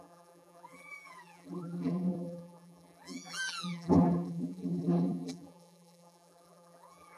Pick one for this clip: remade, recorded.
remade